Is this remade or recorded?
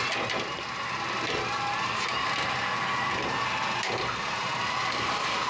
recorded